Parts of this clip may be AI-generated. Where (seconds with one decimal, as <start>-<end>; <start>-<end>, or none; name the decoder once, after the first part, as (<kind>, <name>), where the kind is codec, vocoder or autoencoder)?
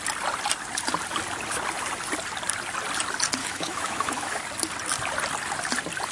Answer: 3.4-4.4 (autoencoder, DAC-VAE)